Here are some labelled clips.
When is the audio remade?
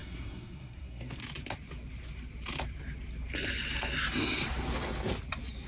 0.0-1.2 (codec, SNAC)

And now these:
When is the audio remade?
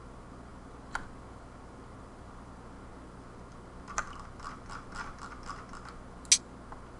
none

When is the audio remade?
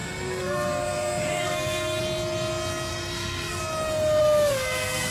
0.0-2.0 (codec, SNAC); 2.9-3.6; 4.2-5.1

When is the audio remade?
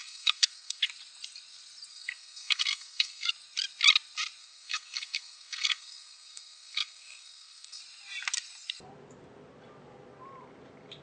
0.0-0.8 (codec, SNAC); 1.9-3.3; 4.4-7.8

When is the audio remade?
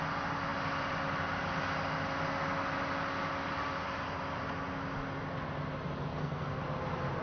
6.1-6.6 (codec, SNAC)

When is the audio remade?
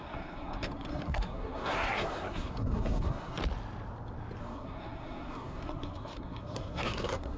0.0-3.4 (codec, SNAC); 4.4-7.4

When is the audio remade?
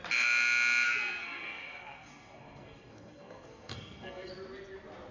1.2-4.3 (codec, SNAC)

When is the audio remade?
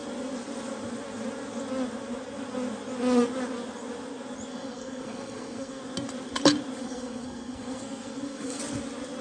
4.5-5.8 (codec, SNAC); 6.8-8.6